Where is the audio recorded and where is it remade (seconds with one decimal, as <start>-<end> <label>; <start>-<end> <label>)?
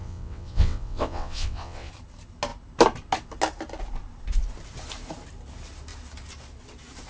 0.0-1.9 remade; 1.9-7.1 recorded